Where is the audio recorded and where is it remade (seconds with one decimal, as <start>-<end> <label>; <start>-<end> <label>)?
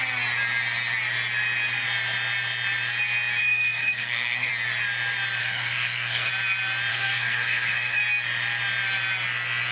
0.0-3.4 recorded; 3.4-4.5 remade; 4.5-5.4 recorded; 5.4-6.3 remade; 6.3-6.9 recorded; 6.9-8.0 remade; 8.0-9.7 recorded